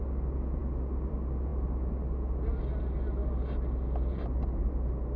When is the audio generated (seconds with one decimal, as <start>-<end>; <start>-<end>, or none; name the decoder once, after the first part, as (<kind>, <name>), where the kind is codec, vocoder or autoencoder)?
none